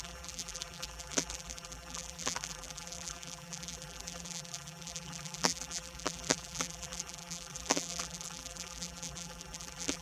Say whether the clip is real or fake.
fake